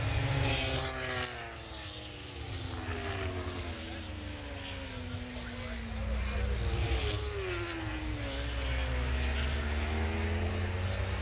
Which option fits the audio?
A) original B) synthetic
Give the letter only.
A